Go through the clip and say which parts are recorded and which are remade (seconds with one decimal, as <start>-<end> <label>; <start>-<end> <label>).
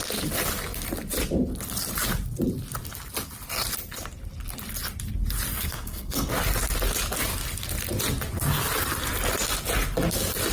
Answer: 0.0-5.5 recorded; 5.5-6.3 remade; 6.3-10.5 recorded